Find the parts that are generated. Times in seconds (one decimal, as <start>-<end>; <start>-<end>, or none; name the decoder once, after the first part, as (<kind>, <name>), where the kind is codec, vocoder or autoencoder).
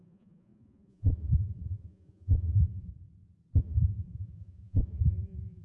0.0-2.9 (vocoder, Vocos); 3.6-5.6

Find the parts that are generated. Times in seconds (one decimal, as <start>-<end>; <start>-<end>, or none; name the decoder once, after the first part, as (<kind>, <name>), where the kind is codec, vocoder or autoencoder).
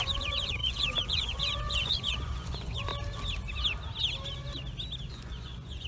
0.0-2.9 (vocoder, Vocos); 5.1-5.9